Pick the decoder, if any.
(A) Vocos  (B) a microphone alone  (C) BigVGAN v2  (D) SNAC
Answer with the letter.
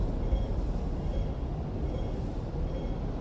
B